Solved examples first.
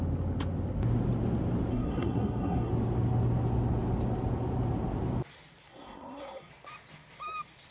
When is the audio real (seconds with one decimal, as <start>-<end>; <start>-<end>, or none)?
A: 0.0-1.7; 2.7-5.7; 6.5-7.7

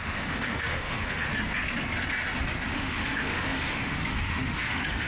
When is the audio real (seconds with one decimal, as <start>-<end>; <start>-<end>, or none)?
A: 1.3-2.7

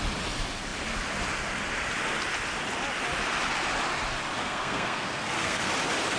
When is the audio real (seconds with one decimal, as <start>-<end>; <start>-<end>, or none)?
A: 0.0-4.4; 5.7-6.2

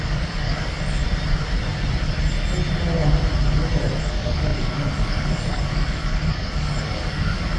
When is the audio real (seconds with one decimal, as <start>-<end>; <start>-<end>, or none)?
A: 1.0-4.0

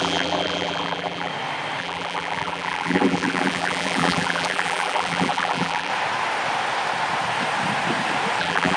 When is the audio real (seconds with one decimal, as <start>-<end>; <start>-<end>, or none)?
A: 1.3-1.8; 5.9-8.4